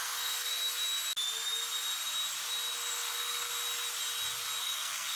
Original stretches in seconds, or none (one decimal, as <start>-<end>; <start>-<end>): 0.5-2.9; 3.5-4.6